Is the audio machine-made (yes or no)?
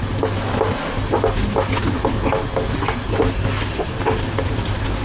no